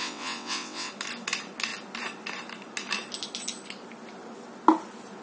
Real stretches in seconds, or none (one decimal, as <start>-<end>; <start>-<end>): 0.9-5.2

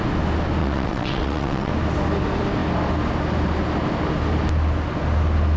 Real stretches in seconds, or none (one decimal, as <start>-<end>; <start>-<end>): 0.0-0.6; 1.7-5.6

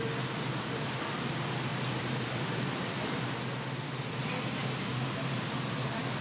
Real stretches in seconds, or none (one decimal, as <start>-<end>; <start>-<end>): 0.0-1.7; 3.3-4.9; 5.6-6.2

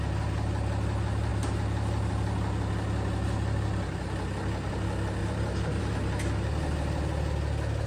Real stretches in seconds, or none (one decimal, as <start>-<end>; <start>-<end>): 0.0-5.2; 5.8-7.9

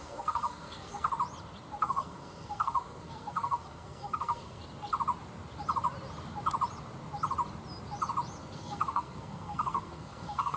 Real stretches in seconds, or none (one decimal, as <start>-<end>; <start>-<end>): 1.1-1.8; 4.6-8.4

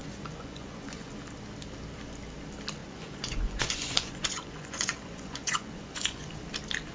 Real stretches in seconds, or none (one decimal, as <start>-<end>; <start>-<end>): 1.1-2.8; 6.3-6.9

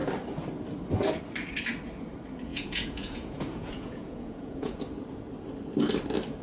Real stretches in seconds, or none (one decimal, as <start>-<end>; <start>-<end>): 0.0-2.5; 4.8-6.4

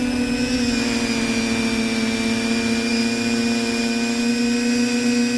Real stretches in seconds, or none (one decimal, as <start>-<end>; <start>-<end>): 0.0-5.4